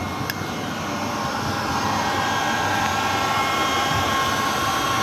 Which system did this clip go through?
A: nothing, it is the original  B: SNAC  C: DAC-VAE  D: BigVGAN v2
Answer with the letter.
D